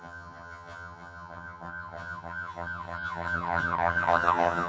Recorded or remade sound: remade